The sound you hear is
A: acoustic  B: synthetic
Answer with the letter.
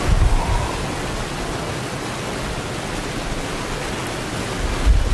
A